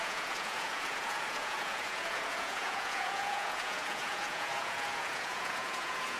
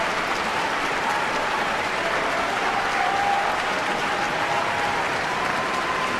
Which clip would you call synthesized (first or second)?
first